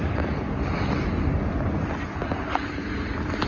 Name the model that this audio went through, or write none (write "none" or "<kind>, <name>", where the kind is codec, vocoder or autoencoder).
none